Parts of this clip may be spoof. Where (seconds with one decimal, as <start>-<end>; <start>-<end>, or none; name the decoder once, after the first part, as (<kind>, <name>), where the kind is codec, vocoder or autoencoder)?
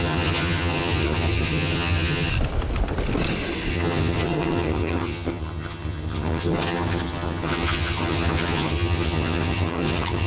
0.0-2.3 (vocoder, HiFi-GAN); 3.7-10.3